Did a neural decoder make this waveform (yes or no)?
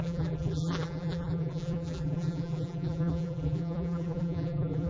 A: yes